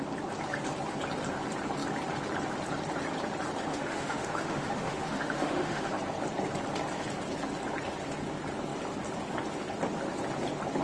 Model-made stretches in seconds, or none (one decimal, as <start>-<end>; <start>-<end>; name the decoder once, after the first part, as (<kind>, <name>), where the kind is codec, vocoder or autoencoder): 3.7-5.9 (autoencoder, DAC-VAE)